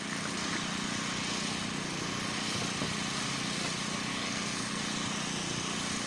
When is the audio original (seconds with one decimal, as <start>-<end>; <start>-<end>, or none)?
0.0-4.1; 4.8-6.1